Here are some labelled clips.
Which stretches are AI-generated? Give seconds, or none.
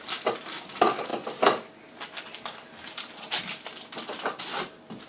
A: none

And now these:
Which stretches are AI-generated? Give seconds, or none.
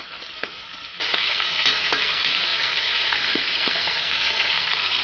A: 0.0-5.0 (codec, SNAC)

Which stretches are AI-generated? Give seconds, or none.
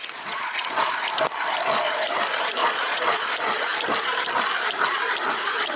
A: 0.0-0.9 (vocoder, Vocos); 2.6-3.3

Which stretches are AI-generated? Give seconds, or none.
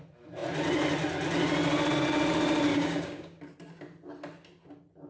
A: 2.7-3.4 (codec, DAC)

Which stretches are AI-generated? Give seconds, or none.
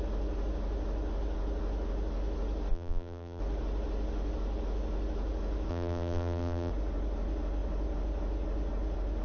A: 2.7-3.4 (vocoder, BigVGAN v2); 5.7-6.7